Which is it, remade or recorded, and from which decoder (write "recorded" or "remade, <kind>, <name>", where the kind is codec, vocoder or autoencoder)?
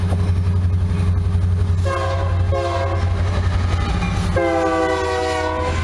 recorded